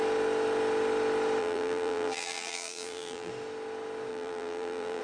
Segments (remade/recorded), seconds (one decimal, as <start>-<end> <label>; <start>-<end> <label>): 0.0-1.4 recorded; 1.4-3.3 remade; 3.3-4.1 recorded; 4.1-5.0 remade